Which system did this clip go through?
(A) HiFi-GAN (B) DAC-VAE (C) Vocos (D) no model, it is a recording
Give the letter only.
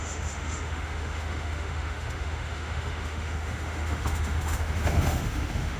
B